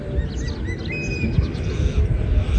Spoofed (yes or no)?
no